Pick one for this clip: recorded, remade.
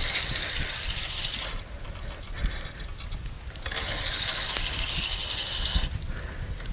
recorded